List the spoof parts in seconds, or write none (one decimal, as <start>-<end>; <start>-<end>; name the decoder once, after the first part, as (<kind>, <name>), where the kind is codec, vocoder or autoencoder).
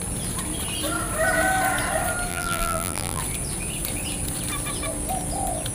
2.3-3.2 (vocoder, BigVGAN v2)